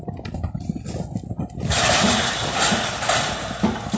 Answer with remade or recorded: recorded